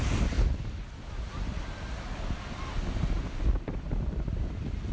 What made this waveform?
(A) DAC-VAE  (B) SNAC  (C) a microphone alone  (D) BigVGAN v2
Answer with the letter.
C